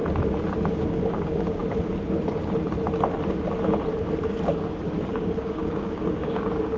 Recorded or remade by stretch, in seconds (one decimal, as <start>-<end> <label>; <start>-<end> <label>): 0.0-0.7 recorded; 0.7-1.6 remade; 1.6-5.1 recorded; 5.1-6.8 remade

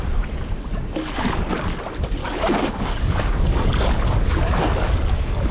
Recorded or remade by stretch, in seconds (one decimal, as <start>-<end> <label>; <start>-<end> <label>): 0.0-0.7 recorded; 0.7-1.5 remade; 1.5-2.2 recorded; 2.2-5.5 remade

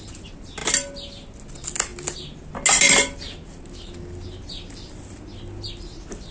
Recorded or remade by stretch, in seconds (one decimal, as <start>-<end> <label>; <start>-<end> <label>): 0.0-6.3 recorded

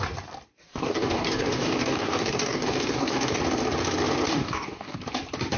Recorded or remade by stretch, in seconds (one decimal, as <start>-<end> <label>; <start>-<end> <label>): 0.0-0.7 recorded; 0.7-3.4 remade; 3.4-4.3 recorded; 4.3-5.0 remade; 5.0-5.6 recorded